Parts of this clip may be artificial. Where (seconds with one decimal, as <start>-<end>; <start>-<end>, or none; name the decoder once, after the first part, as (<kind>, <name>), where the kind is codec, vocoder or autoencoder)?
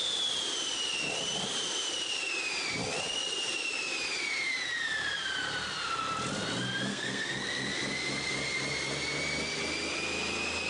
6.9-7.7 (codec, SNAC)